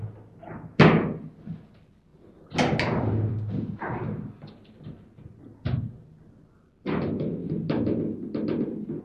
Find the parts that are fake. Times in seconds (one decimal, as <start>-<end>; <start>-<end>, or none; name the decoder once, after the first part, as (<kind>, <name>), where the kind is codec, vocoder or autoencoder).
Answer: 7.4-9.0 (vocoder, BigVGAN v2)